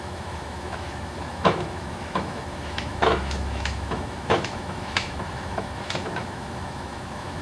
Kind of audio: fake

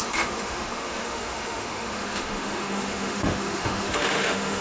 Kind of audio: fake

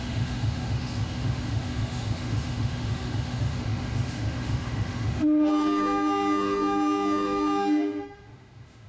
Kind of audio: fake